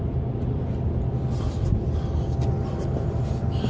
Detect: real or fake real